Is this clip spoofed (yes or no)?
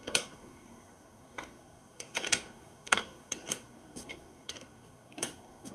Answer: yes